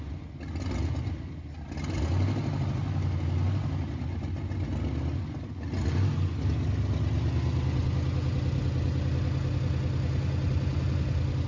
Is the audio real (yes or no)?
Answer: yes